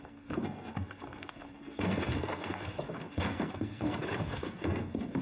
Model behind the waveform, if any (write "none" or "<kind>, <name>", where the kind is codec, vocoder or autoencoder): codec, SNAC